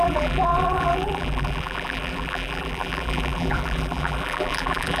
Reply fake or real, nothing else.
fake